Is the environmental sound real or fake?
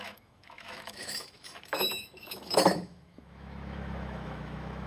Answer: fake